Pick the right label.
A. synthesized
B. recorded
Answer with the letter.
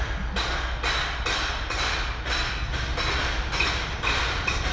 B